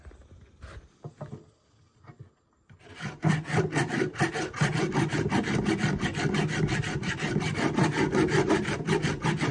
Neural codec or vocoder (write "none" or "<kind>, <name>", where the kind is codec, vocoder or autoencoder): none